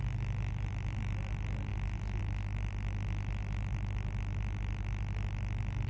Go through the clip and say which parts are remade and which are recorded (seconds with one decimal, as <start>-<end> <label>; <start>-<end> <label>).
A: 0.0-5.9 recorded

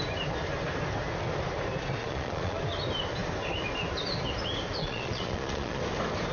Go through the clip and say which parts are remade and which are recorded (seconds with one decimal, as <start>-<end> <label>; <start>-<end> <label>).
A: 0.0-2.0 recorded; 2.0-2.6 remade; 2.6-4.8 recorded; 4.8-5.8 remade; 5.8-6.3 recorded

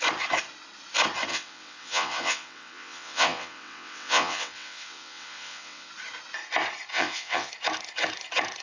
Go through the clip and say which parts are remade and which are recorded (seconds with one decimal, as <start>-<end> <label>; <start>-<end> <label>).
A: 0.0-1.3 recorded; 1.3-5.9 remade; 5.9-6.9 recorded; 6.9-7.5 remade; 7.5-8.6 recorded

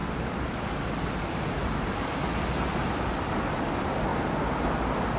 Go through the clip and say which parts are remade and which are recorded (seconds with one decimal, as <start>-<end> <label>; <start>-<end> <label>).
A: 0.0-5.2 recorded

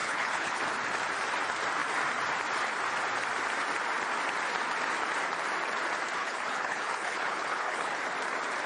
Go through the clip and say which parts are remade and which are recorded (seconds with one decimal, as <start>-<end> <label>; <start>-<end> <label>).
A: 0.0-0.6 remade; 0.6-6.2 recorded; 6.2-8.0 remade; 8.0-8.7 recorded

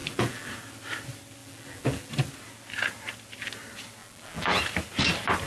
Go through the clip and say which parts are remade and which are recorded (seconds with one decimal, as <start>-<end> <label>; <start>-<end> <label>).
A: 0.0-0.5 remade; 0.5-1.4 recorded; 1.4-2.1 remade; 2.1-4.0 recorded; 4.0-4.6 remade; 4.6-5.5 recorded

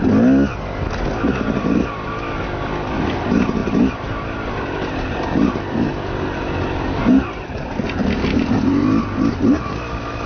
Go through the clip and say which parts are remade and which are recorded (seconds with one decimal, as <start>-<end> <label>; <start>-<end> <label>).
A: 0.0-10.3 recorded